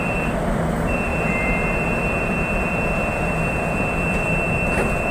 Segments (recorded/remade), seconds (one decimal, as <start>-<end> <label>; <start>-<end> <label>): 0.0-5.1 remade